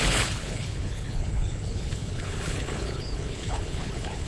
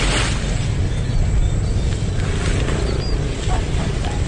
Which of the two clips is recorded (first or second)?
second